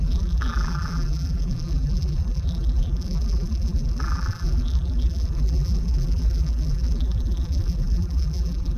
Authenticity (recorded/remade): remade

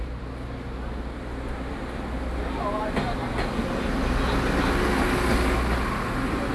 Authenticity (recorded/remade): recorded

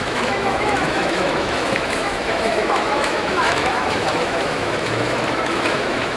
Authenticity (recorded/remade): remade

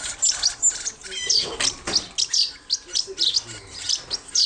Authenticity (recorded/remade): recorded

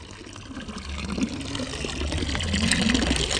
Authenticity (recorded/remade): recorded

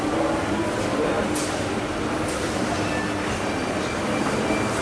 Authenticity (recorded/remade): recorded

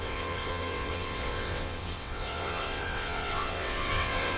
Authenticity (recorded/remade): remade